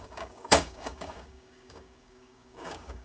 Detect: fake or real fake